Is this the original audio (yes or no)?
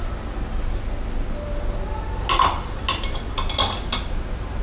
yes